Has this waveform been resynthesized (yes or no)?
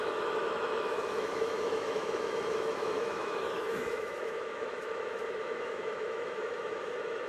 yes